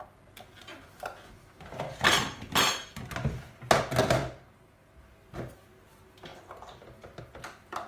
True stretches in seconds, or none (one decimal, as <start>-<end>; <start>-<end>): 0.0-7.9